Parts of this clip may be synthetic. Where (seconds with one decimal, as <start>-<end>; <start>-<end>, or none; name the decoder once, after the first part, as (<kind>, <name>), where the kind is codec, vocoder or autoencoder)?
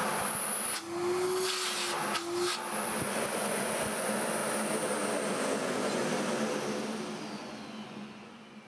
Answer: 3.1-4.4 (vocoder, Vocos); 5.3-6.0; 7.3-8.7